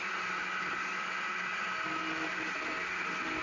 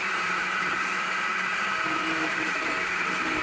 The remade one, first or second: second